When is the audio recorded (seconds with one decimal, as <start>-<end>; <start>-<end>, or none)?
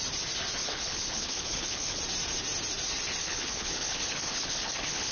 0.0-0.6; 2.0-3.2